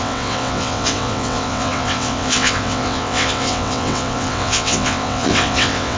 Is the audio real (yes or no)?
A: no